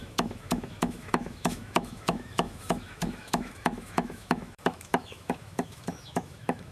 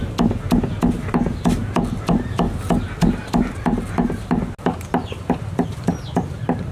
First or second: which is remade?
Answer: first